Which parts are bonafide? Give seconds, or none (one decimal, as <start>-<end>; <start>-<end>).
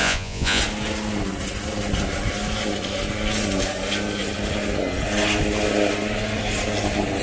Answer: 0.6-7.2